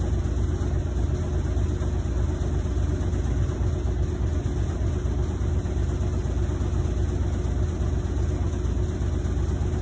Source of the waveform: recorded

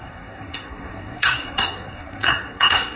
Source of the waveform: remade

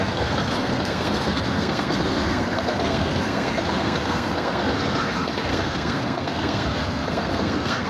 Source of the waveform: remade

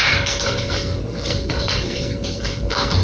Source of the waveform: remade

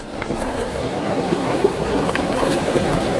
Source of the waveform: remade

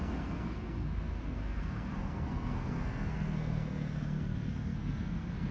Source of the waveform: remade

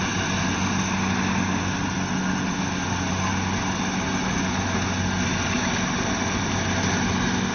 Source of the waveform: recorded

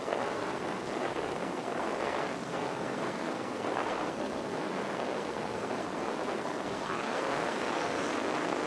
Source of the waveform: remade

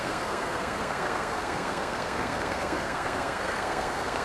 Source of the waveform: remade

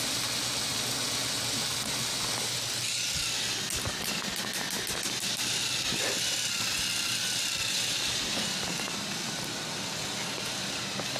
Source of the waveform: recorded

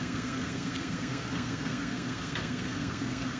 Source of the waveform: remade